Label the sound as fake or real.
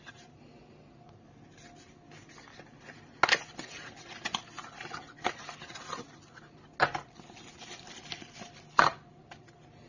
real